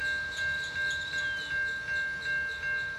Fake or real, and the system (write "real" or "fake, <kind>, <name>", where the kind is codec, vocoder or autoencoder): real